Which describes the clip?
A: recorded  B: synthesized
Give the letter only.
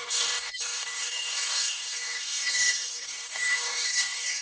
B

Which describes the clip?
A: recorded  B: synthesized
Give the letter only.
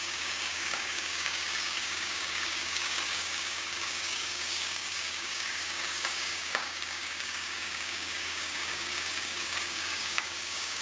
B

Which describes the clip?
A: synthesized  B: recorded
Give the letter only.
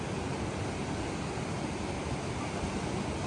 B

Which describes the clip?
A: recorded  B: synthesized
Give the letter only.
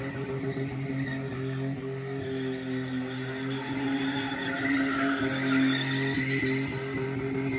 A